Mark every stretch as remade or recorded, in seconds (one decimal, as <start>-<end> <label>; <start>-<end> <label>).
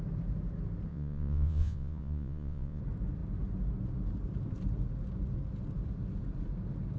0.0-0.9 recorded; 0.9-2.8 remade; 2.8-7.0 recorded